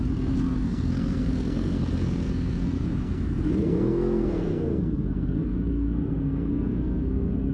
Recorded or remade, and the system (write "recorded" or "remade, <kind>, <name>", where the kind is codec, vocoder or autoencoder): remade, codec, SNAC